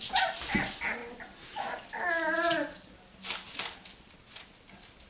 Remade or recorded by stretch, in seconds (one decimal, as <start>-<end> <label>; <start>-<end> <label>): 0.0-5.1 recorded